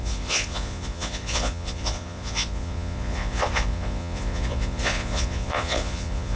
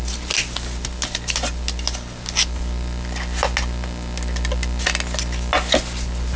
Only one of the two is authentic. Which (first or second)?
second